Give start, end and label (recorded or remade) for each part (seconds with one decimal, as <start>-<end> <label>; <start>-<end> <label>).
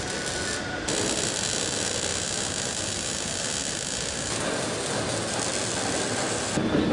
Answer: 0.0-2.1 remade; 2.1-6.2 recorded; 6.2-6.9 remade